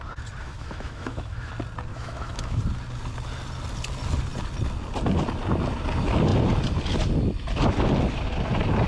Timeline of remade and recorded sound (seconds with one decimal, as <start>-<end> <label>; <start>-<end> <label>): 0.0-0.4 recorded; 0.4-1.5 remade; 1.5-1.9 recorded; 1.9-2.6 remade; 2.6-8.9 recorded